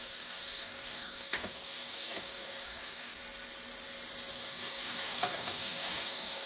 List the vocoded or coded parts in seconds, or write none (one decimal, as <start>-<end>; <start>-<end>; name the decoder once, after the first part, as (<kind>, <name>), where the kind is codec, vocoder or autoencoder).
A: 0.0-3.2 (codec, DAC); 4.3-6.5